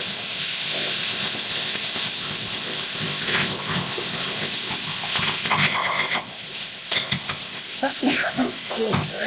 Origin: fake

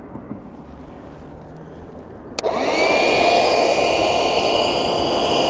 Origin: real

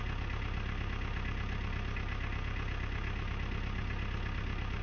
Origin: real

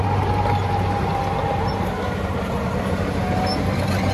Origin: real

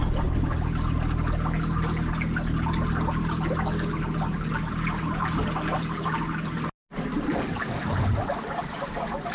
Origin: real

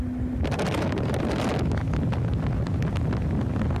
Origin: real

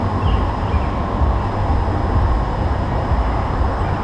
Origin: real